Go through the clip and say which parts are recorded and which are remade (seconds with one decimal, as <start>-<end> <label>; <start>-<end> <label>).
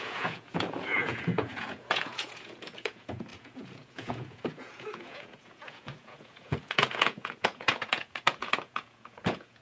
0.0-9.6 remade